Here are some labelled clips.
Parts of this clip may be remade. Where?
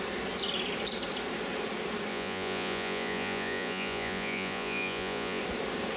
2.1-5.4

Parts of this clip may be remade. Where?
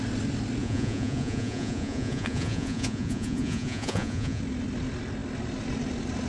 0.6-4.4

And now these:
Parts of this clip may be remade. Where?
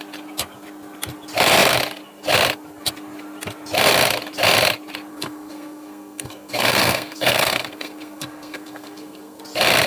5.1-9.4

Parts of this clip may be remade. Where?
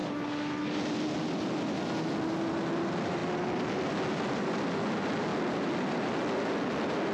none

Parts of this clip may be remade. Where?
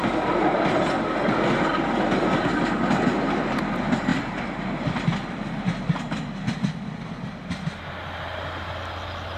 none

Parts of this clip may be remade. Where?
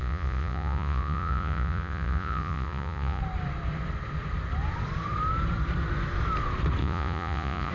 0.0-3.2; 6.8-7.7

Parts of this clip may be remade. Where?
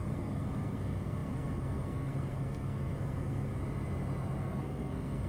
0.0-3.5; 4.4-5.3